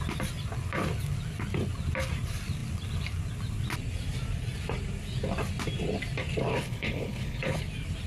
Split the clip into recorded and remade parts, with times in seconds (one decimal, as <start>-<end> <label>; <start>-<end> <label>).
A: 0.0-6.5 recorded; 6.5-7.6 remade; 7.6-8.1 recorded